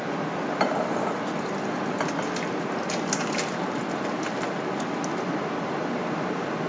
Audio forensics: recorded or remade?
recorded